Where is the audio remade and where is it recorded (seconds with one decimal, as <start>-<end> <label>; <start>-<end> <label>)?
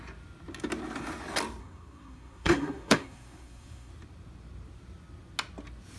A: 0.0-1.6 recorded; 1.6-3.9 remade; 3.9-6.0 recorded